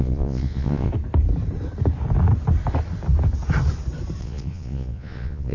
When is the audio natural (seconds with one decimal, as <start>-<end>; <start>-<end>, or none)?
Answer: 0.9-4.2